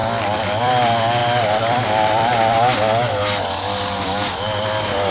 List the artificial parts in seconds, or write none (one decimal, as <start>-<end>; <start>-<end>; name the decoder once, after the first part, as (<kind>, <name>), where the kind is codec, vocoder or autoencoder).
0.0-2.3 (vocoder, BigVGAN v2); 3.6-5.1